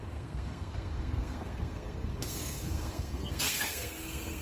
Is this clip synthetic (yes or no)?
yes